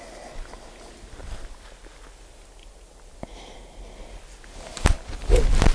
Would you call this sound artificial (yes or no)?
no